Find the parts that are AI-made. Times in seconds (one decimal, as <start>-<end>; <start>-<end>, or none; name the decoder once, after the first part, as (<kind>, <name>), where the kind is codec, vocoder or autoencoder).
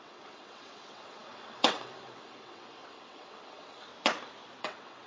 0.0-3.9 (vocoder, WaveNeXt); 4.6-5.1